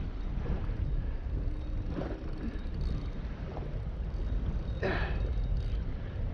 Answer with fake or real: real